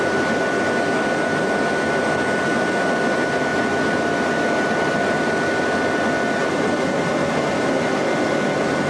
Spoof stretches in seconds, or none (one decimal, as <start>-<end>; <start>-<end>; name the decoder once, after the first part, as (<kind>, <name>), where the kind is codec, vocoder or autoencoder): none